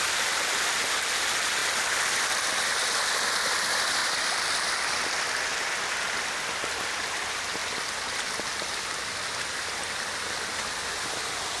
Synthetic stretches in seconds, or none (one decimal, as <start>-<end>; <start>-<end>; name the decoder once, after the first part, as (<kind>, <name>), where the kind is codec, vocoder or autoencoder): 4.0-4.5 (vocoder, BigVGAN v2)